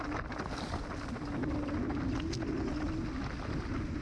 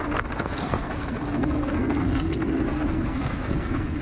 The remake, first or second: second